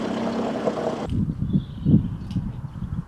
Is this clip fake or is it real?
real